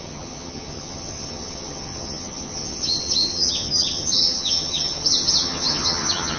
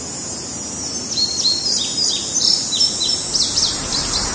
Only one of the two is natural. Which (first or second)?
second